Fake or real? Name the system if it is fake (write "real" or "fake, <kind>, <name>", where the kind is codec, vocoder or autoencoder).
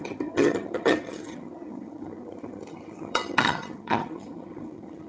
fake, vocoder, HiFi-GAN